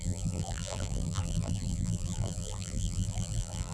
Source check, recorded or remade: remade